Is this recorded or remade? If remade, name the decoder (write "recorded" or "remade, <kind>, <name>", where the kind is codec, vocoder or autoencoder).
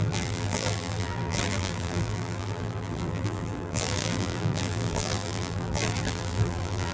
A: remade, vocoder, BigVGAN v2